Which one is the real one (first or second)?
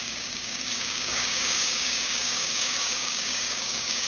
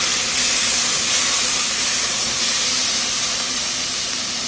second